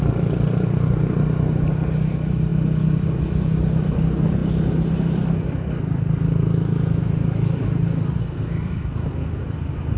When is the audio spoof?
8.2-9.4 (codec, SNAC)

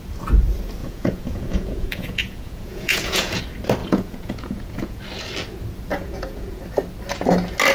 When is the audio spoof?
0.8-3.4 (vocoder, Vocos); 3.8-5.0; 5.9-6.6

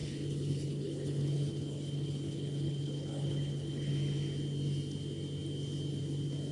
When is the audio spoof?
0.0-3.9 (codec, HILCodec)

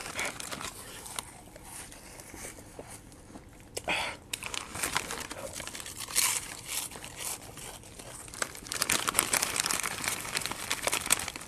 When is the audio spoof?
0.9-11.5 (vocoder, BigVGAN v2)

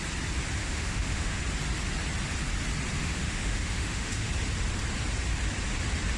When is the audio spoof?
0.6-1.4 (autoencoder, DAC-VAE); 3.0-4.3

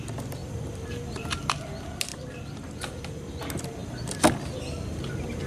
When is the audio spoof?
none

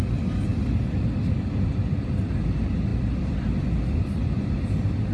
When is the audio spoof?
none